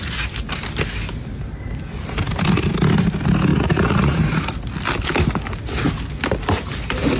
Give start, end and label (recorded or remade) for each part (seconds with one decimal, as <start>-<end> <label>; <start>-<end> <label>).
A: 0.0-3.5 recorded; 3.5-4.2 remade; 4.2-7.2 recorded